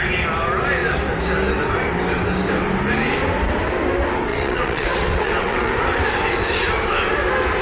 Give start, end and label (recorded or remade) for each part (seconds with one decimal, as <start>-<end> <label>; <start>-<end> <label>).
0.0-4.3 recorded; 4.3-5.7 remade; 5.7-7.6 recorded

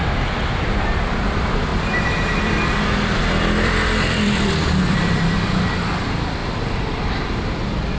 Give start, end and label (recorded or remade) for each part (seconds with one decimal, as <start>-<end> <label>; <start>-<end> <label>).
0.0-6.4 remade; 6.4-8.0 recorded

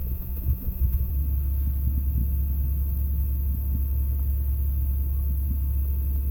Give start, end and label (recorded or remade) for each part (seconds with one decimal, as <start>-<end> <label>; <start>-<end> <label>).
0.0-1.1 remade; 1.1-6.3 recorded

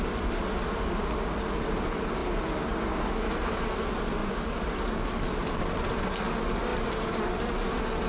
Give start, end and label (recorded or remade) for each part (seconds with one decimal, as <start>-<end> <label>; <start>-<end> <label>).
0.0-8.1 recorded